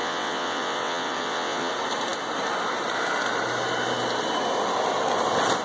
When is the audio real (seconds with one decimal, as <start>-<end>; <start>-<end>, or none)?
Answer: 1.7-5.6